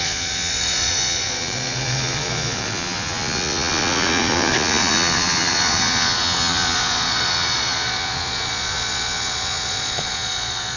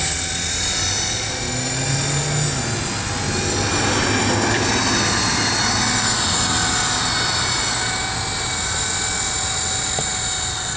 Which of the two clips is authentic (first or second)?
second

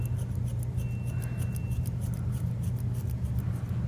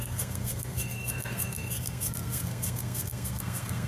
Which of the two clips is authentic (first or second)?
first